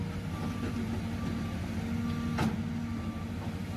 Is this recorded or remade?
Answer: recorded